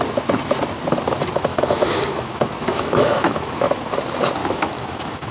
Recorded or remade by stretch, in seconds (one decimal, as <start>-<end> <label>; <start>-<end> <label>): 0.0-1.5 recorded; 1.5-3.7 remade; 3.7-4.4 recorded; 4.4-5.3 remade